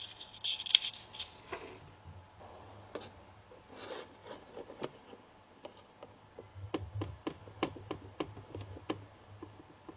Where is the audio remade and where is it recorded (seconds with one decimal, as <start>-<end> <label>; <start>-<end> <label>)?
0.0-10.0 recorded